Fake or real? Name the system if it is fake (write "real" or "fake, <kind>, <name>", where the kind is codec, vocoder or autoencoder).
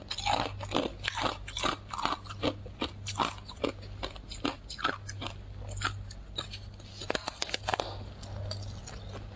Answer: real